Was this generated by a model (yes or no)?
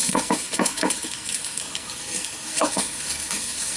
yes